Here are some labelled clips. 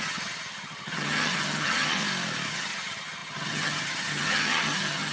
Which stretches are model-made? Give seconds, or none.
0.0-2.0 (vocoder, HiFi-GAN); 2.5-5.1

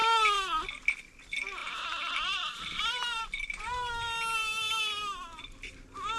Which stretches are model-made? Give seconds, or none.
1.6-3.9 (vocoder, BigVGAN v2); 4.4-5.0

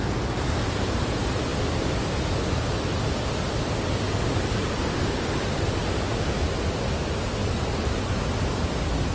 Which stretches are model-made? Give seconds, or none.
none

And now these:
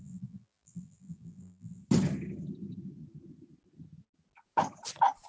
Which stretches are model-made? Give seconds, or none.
0.0-1.8 (vocoder, BigVGAN v2)

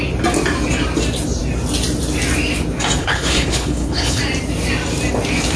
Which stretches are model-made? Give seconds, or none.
3.0-4.2 (codec, HILCodec)

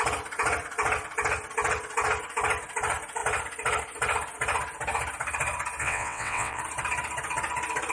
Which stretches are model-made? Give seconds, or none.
5.8-6.6 (vocoder, WaveNeXt)